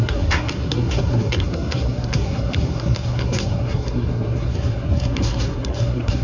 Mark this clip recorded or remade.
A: remade